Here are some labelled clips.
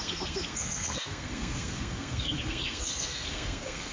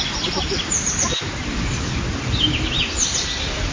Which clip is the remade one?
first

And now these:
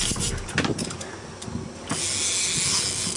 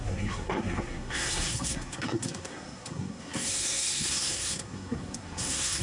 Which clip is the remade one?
second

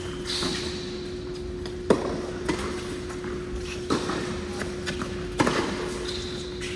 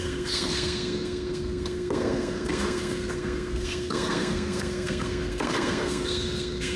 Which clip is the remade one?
second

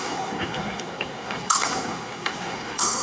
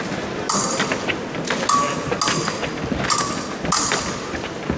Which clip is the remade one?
first